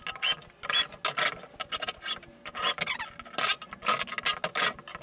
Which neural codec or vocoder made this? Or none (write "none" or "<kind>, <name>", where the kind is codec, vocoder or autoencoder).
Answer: none